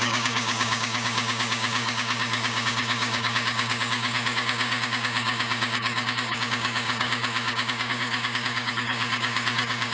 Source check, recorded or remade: remade